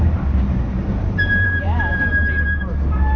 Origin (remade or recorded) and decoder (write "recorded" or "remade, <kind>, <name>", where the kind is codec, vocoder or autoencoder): remade, vocoder, BigVGAN v2